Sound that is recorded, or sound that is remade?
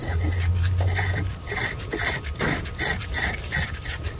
recorded